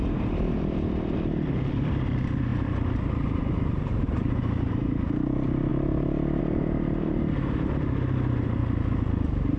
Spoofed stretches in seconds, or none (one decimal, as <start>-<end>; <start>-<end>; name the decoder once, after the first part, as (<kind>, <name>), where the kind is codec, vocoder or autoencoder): 0.0-5.7 (vocoder, BigVGAN v2); 6.4-8.6